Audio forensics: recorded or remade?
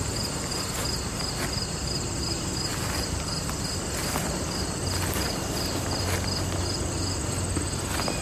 recorded